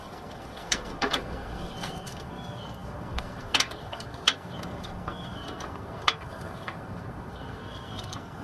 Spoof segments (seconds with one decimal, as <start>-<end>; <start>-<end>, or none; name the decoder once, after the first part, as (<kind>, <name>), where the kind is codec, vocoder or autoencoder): 0.0-8.4 (codec, SNAC)